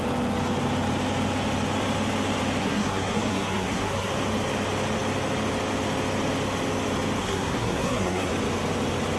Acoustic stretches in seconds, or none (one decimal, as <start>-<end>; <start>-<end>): 0.0-2.6; 4.1-7.2; 8.3-9.2